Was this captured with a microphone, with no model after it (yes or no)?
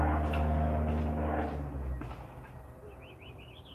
yes